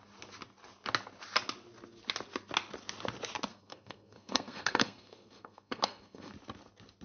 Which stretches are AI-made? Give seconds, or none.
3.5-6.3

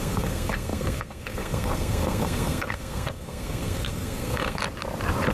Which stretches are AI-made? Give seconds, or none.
0.0-4.6

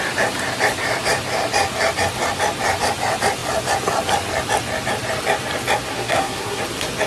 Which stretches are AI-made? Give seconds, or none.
5.9-6.6

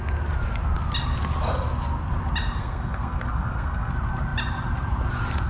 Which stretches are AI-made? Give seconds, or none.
2.6-3.9

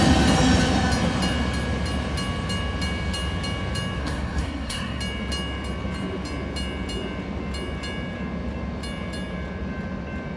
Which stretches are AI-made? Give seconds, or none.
4.0-5.0

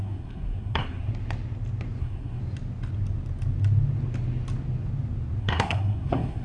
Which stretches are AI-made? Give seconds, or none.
0.0-1.1; 2.0-2.4; 5.4-6.4

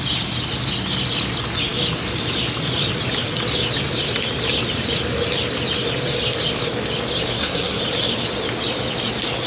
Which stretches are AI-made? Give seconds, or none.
7.3-7.8